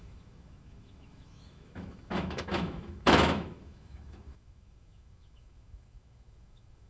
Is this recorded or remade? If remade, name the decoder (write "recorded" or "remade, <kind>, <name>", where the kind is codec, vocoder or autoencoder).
remade, autoencoder, DAC-VAE